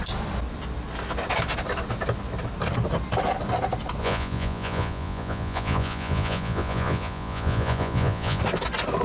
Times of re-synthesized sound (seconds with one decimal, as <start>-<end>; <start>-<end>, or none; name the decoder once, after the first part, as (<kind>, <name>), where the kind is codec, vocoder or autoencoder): 4.0-8.4 (vocoder, Vocos)

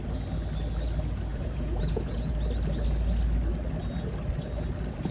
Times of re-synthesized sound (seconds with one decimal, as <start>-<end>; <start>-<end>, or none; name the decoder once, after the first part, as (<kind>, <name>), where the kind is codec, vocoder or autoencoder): 1.3-2.3 (vocoder, Vocos)

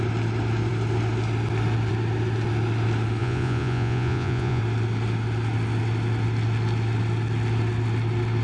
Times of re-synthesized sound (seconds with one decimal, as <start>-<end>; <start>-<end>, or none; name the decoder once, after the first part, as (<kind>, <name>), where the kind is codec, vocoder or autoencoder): 3.2-4.6 (vocoder, Vocos)